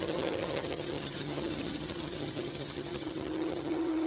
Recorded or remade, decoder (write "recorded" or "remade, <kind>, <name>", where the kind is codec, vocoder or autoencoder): remade, vocoder, HiFi-GAN